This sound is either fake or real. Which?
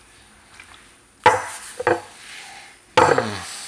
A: real